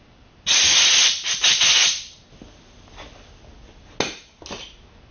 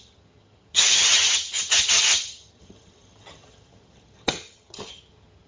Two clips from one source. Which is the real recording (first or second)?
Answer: first